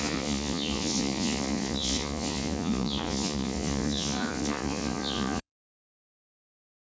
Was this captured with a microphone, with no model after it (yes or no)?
no